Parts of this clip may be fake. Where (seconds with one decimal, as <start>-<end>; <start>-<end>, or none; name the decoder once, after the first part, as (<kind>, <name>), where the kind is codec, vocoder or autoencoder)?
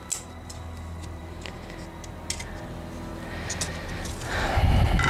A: none